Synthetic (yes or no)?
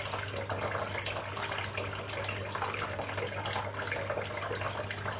no